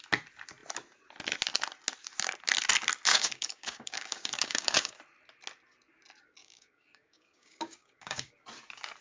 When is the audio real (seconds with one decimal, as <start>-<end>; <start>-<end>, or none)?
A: 0.0-3.1; 5.0-6.4; 8.3-9.0